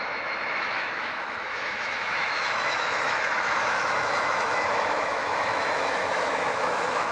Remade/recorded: remade